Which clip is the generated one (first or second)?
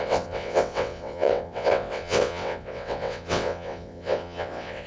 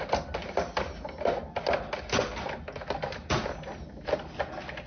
first